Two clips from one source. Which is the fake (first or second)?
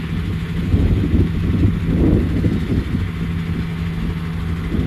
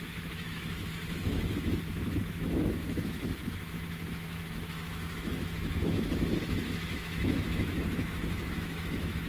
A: second